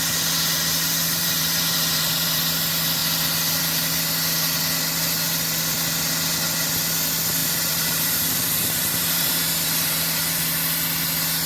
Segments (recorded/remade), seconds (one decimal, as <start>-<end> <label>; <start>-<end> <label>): 0.0-1.0 recorded; 1.0-2.4 remade; 2.4-7.4 recorded; 7.4-10.4 remade; 10.4-11.5 recorded